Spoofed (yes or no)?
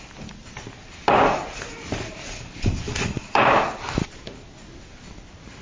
no